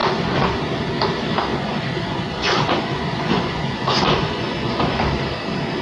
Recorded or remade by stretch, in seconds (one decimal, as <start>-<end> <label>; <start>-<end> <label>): 0.0-0.6 remade; 0.6-1.5 recorded; 1.5-5.0 remade; 5.0-5.8 recorded